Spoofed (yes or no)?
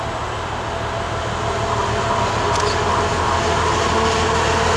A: no